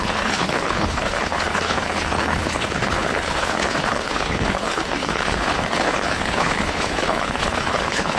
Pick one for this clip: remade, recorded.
remade